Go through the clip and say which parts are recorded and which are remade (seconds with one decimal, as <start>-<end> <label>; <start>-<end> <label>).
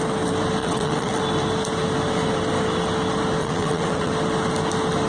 0.0-0.6 recorded; 0.6-1.2 remade; 1.2-3.4 recorded; 3.4-4.1 remade; 4.1-5.1 recorded